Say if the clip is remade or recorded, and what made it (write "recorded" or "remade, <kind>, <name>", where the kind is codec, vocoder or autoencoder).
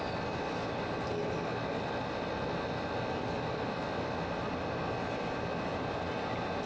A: recorded